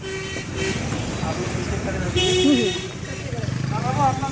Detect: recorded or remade recorded